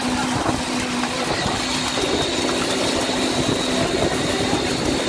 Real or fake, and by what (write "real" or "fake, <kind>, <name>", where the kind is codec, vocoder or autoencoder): real